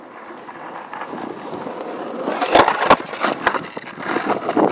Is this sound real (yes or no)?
yes